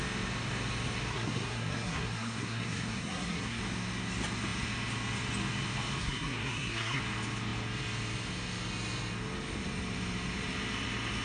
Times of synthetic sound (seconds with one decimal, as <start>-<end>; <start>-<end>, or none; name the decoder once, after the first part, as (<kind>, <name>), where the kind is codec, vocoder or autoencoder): 1.1-3.6 (codec, SNAC); 6.0-7.0